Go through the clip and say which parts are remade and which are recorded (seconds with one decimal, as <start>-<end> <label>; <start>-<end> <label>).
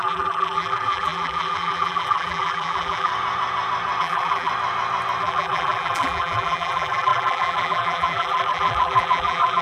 0.0-3.1 remade; 3.1-4.0 recorded; 4.0-4.5 remade; 4.5-5.2 recorded; 5.2-9.6 remade